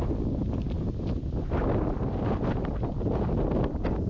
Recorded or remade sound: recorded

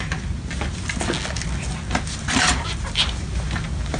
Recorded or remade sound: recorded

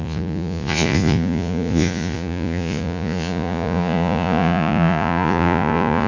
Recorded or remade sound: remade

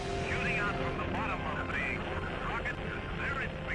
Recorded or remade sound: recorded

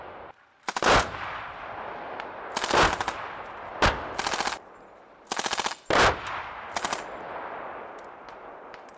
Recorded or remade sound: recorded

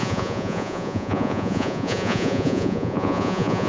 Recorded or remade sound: remade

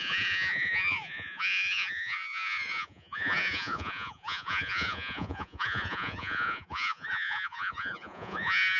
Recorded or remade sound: remade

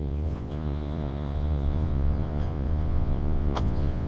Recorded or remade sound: remade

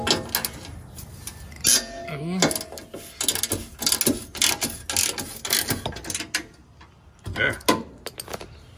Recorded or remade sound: recorded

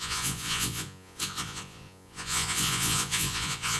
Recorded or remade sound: remade